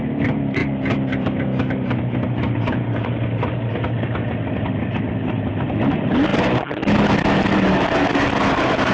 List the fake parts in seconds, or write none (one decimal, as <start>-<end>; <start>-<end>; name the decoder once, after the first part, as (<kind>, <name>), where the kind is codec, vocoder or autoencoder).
none